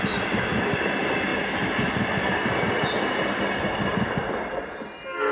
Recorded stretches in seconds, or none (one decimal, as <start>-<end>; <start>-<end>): 0.0-5.3